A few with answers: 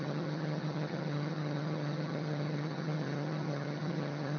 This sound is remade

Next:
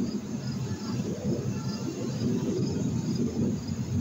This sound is remade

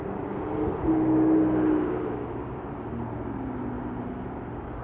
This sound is recorded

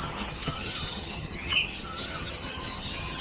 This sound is remade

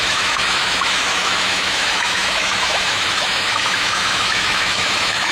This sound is remade